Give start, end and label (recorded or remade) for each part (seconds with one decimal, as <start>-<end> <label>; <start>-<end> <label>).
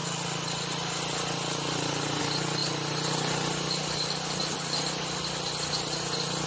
0.0-6.5 recorded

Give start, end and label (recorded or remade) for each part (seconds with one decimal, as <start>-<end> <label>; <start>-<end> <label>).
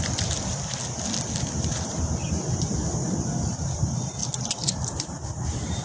0.0-0.8 remade; 0.8-1.5 recorded; 1.5-4.2 remade; 4.2-5.0 recorded; 5.0-5.8 remade